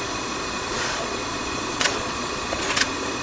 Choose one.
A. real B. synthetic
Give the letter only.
B